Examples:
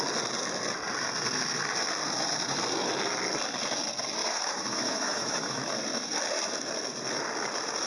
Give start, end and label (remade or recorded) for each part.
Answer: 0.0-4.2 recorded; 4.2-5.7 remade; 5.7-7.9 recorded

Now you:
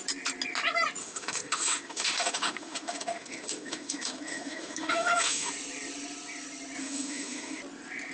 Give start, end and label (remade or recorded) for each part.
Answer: 0.0-1.0 recorded; 1.0-5.5 remade; 5.5-6.8 recorded; 6.8-7.6 remade; 7.6-8.1 recorded

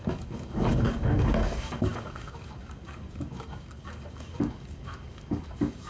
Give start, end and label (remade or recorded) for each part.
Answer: 0.0-5.9 remade

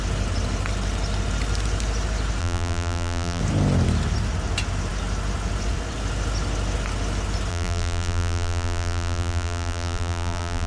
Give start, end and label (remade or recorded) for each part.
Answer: 0.0-2.4 recorded; 2.4-3.4 remade; 3.4-7.5 recorded; 7.5-10.7 remade

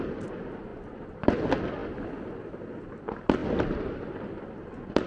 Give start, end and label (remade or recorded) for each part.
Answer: 0.0-0.7 recorded; 0.7-1.4 remade; 1.4-5.1 recorded

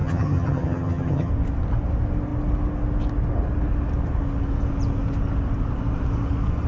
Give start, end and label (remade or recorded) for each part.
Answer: 0.0-1.3 remade; 1.3-6.7 recorded

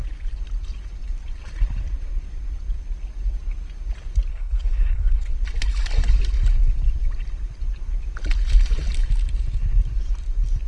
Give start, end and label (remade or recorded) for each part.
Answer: 0.0-4.3 recorded; 4.3-5.3 remade; 5.3-10.7 recorded